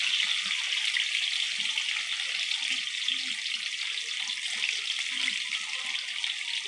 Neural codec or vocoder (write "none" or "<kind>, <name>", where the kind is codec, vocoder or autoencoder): none